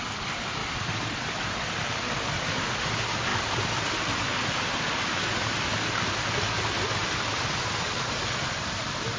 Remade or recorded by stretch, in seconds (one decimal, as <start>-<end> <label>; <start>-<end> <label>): 0.0-9.2 recorded